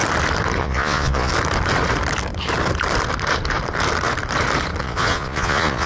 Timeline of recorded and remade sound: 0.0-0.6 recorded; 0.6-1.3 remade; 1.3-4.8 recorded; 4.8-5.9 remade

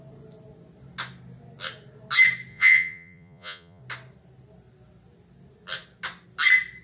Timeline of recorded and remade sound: 0.0-2.5 recorded; 2.5-3.8 remade; 3.8-6.8 recorded

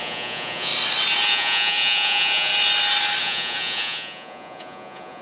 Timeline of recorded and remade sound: 0.0-0.7 remade; 0.7-1.3 recorded; 1.3-2.5 remade; 2.5-3.2 recorded; 3.2-5.2 remade

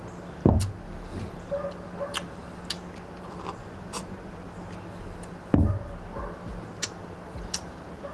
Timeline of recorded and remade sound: 0.0-3.6 recorded; 3.6-4.3 remade; 4.3-8.1 recorded

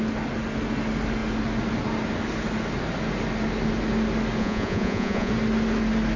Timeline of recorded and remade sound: 0.0-4.4 recorded; 4.4-5.3 remade; 5.3-6.2 recorded

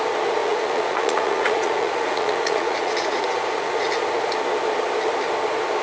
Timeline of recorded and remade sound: 0.0-0.4 recorded; 0.4-3.9 remade; 3.9-5.8 recorded

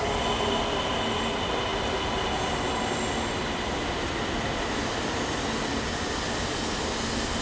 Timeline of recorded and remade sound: 0.0-7.4 recorded

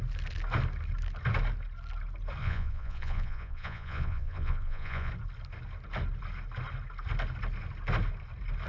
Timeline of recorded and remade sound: 0.0-2.4 recorded; 2.4-5.1 remade; 5.1-8.7 recorded